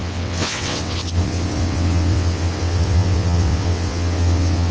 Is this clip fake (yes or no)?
yes